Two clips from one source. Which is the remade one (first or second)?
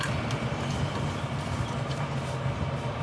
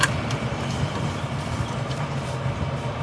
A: second